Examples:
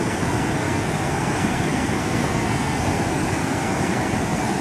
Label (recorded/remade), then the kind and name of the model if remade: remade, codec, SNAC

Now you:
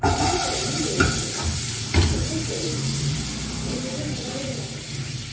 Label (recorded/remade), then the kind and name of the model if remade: remade, vocoder, BigVGAN v2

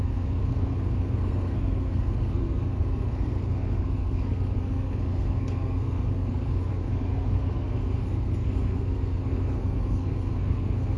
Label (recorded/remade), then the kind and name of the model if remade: remade, codec, SNAC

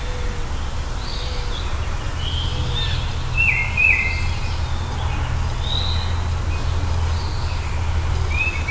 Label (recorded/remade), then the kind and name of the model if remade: recorded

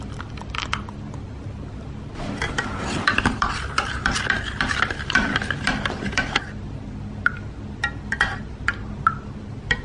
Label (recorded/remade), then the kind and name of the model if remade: remade, vocoder, BigVGAN v2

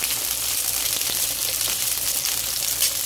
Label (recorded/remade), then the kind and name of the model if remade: remade, vocoder, BigVGAN v2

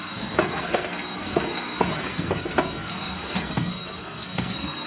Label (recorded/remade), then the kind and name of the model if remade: remade, codec, SNAC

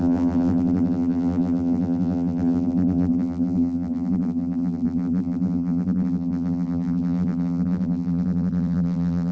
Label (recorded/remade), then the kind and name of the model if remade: remade, vocoder, BigVGAN v2